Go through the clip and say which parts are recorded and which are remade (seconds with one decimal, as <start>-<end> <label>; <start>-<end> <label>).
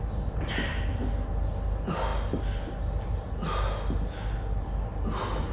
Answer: 0.0-5.5 recorded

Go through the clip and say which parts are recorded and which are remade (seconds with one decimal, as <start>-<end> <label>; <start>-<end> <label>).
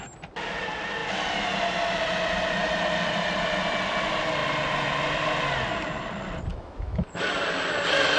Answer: 0.0-6.5 recorded; 6.5-7.2 remade; 7.2-8.2 recorded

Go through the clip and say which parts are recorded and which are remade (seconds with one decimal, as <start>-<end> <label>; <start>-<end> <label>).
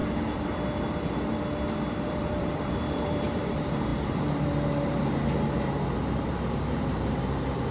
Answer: 0.0-2.0 recorded; 2.0-7.7 remade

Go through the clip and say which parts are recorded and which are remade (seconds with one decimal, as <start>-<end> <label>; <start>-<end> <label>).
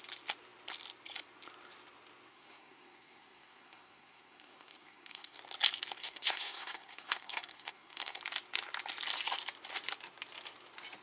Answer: 0.0-2.3 recorded; 2.3-5.4 remade; 5.4-6.0 recorded; 6.0-8.2 remade; 8.2-11.0 recorded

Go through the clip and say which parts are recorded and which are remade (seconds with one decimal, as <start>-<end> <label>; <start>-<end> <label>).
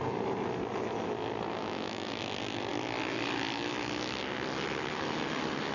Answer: 0.0-5.7 recorded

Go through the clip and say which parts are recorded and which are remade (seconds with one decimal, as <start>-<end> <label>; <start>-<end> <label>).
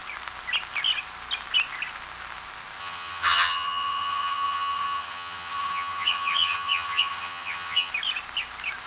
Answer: 0.0-2.8 recorded; 2.8-7.9 remade; 7.9-8.9 recorded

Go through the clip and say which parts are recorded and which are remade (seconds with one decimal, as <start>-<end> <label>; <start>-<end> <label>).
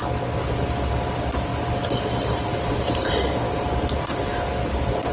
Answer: 0.0-5.1 recorded